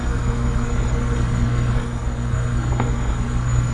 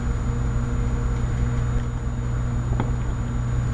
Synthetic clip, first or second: first